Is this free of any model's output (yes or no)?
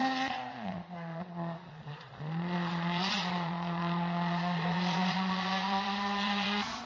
no